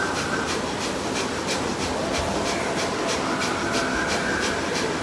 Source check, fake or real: real